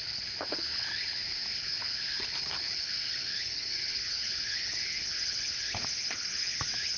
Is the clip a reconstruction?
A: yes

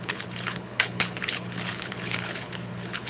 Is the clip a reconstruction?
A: yes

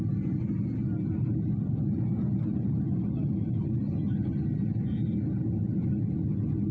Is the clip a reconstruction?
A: no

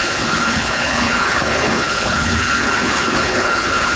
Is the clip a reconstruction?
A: yes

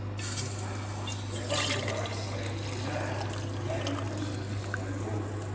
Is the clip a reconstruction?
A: no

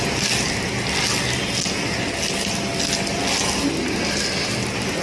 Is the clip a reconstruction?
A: no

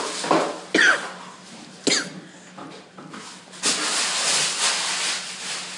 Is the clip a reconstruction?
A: no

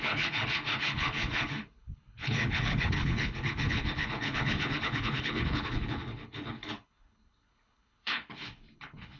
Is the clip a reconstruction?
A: yes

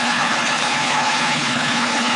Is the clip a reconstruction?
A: yes